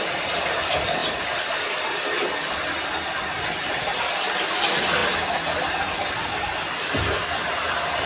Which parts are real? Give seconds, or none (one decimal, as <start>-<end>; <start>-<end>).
0.0-8.1